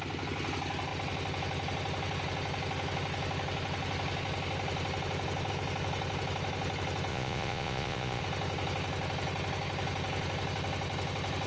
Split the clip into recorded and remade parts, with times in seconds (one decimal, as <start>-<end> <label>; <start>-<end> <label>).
0.0-7.1 recorded; 7.1-8.2 remade; 8.2-11.5 recorded